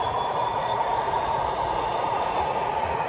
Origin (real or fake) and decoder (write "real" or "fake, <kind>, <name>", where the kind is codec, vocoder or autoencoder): fake, vocoder, Vocos